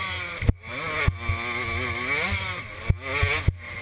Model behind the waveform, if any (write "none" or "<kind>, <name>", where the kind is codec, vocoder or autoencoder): none